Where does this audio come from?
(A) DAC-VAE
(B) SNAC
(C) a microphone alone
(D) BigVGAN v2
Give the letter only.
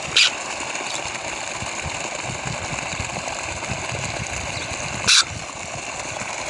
C